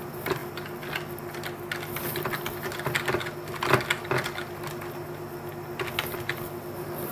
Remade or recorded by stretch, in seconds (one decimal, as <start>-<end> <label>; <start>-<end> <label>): 0.0-7.1 recorded